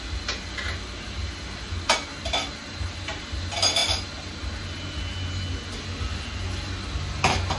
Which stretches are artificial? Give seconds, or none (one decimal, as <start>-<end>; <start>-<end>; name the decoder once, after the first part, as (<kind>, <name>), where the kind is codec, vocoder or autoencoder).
2.6-3.2 (vocoder, BigVGAN v2)